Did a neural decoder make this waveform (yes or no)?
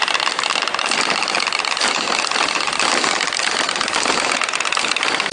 no